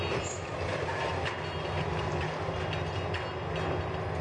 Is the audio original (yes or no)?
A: yes